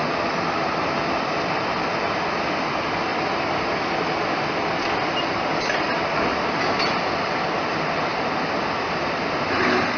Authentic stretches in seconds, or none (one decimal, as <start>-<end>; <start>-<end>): 0.0-10.0